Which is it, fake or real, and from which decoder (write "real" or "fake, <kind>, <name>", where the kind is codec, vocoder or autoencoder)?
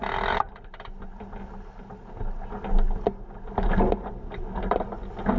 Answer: real